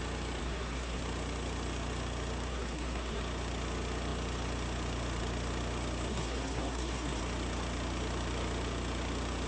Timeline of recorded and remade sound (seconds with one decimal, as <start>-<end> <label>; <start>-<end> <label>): 0.0-0.4 recorded; 0.4-1.0 remade; 1.0-2.5 recorded; 2.5-3.2 remade; 3.2-6.1 recorded; 6.1-7.2 remade; 7.2-9.5 recorded

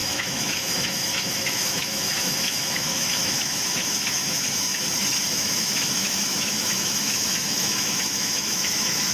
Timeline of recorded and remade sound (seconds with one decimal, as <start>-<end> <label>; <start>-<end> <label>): 0.0-4.7 remade; 4.7-5.3 recorded; 5.3-9.1 remade

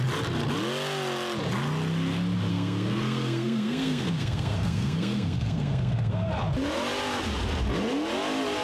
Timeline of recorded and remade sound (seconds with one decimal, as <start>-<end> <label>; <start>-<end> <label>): 0.0-2.5 recorded; 2.5-6.3 remade; 6.3-8.6 recorded

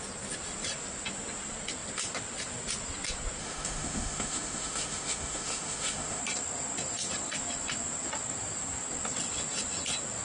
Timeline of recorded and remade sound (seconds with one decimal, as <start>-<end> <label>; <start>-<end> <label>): 0.0-3.4 recorded; 3.4-6.2 remade; 6.2-10.2 recorded

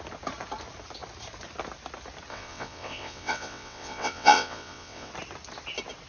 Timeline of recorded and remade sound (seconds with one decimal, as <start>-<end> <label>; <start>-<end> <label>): 0.0-2.3 recorded; 2.3-5.1 remade; 5.1-6.1 recorded

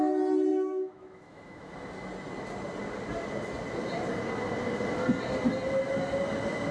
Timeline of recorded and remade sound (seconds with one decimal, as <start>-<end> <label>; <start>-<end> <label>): 0.0-0.5 recorded; 0.5-1.7 remade; 1.7-6.7 recorded

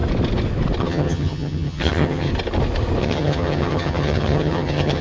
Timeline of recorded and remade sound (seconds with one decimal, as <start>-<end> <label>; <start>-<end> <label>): 0.0-0.8 recorded; 0.8-2.3 remade; 2.3-3.0 recorded; 3.0-5.0 remade

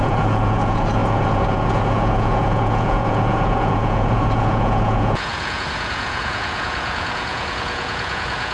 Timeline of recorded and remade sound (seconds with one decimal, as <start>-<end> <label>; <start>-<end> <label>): 0.0-8.5 remade